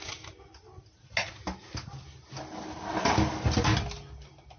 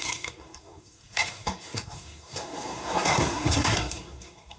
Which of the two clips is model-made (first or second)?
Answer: second